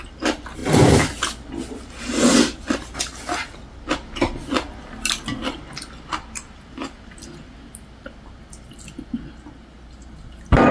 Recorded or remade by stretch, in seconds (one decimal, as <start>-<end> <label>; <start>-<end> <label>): 0.0-10.7 recorded